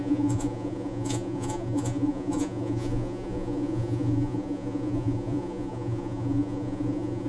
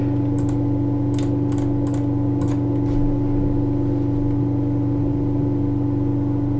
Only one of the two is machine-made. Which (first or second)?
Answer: first